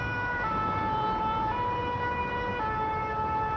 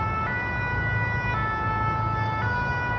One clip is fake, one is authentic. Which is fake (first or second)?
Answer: first